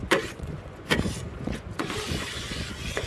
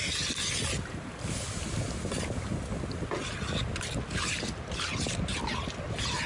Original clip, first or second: second